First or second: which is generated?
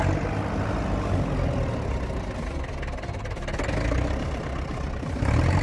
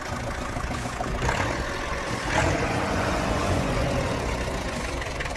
second